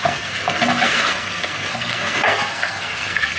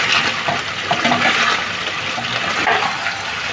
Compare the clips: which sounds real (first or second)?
second